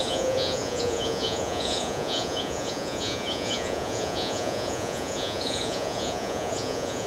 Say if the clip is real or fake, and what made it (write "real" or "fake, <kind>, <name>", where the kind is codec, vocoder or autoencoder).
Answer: fake, vocoder, Vocos